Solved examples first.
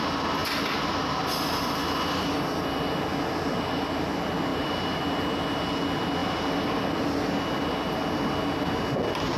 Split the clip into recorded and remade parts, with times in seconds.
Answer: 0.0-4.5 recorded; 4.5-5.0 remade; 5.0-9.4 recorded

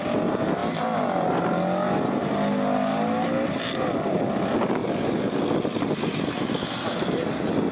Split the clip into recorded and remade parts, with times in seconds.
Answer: 0.0-4.8 recorded; 4.8-5.4 remade; 5.4-7.7 recorded

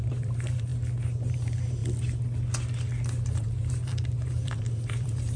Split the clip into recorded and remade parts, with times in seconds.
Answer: 0.0-0.7 remade; 0.7-1.3 recorded; 1.3-1.8 remade; 1.8-3.2 recorded; 3.2-5.4 remade

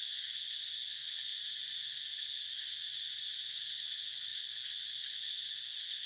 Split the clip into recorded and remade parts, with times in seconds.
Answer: 0.0-1.3 remade; 1.3-1.9 recorded; 1.9-2.8 remade; 2.8-3.7 recorded; 3.7-6.1 remade

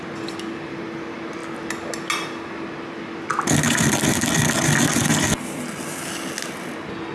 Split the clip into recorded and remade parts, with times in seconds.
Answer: 0.0-7.1 recorded

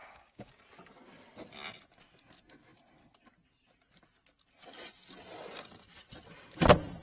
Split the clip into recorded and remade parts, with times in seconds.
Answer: 0.0-0.5 remade; 0.5-7.0 recorded